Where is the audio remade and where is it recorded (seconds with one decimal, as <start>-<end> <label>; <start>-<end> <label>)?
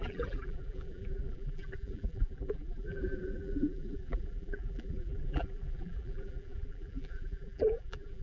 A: 0.0-8.2 remade